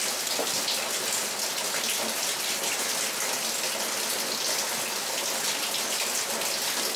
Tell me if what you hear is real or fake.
real